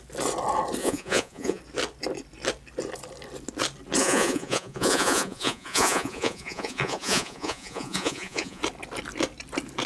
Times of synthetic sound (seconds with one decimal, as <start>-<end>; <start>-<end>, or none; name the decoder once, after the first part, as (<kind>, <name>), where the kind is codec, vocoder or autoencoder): 0.8-1.6 (vocoder, Vocos); 4.0-8.6